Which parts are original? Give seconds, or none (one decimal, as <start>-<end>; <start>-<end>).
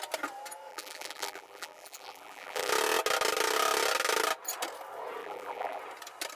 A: 0.0-0.7; 2.7-5.2; 5.8-6.4